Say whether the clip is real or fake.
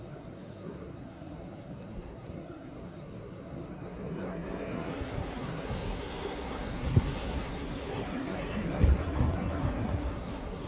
fake